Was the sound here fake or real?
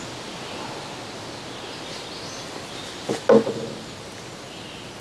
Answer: real